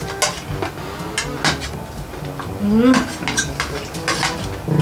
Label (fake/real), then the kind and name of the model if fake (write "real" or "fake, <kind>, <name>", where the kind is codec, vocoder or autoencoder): real